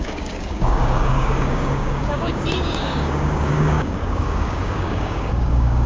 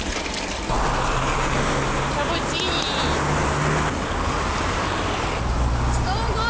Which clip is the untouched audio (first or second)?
second